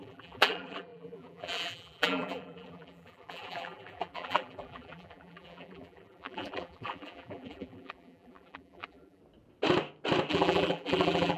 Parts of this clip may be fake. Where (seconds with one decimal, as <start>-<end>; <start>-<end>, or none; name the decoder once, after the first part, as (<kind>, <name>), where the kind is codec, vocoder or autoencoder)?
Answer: 0.0-9.2 (vocoder, BigVGAN v2); 10.3-11.4

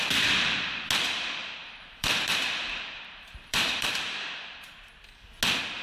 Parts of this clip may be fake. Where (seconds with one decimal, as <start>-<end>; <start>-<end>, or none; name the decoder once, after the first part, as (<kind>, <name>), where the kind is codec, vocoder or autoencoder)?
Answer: 1.4-4.9 (vocoder, BigVGAN v2)

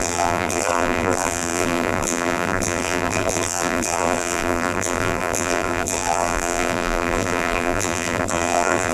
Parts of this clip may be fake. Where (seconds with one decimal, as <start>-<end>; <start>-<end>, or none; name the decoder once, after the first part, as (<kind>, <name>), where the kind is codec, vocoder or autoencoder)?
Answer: 0.0-8.9 (vocoder, BigVGAN v2)

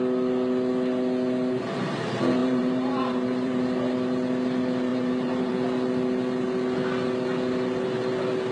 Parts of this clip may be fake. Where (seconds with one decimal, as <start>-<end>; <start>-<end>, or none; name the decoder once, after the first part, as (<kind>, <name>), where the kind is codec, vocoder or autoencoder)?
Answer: 2.4-3.6 (vocoder, BigVGAN v2); 4.9-5.5

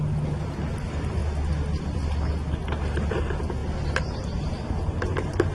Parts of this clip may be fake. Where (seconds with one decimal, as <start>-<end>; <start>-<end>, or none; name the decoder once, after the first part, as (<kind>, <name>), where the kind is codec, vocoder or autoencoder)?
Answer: none